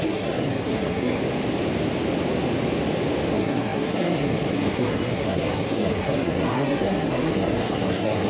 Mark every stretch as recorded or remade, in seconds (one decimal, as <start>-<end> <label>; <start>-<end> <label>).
0.0-1.2 remade; 1.2-3.3 recorded; 3.3-8.3 remade